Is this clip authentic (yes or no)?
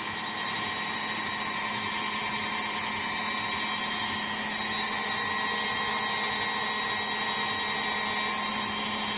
yes